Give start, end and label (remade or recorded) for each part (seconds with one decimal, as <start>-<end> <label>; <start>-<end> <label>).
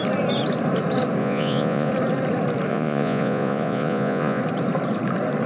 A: 0.0-1.2 recorded; 1.2-1.9 remade; 1.9-2.7 recorded; 2.7-4.4 remade; 4.4-5.5 recorded